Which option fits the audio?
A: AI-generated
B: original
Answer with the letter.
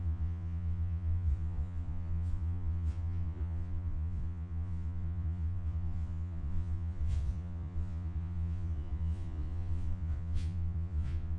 A